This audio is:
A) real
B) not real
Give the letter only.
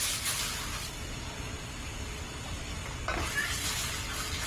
A